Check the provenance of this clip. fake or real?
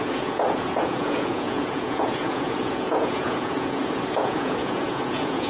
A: fake